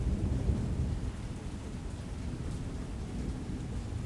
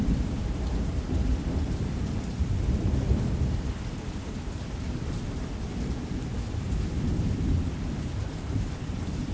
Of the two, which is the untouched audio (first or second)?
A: first